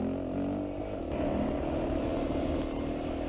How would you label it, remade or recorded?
recorded